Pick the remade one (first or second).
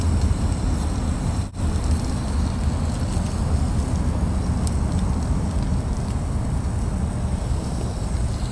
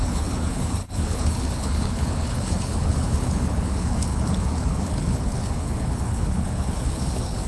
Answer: second